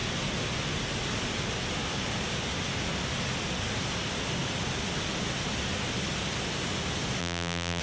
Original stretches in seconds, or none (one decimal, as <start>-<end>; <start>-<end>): 0.0-7.2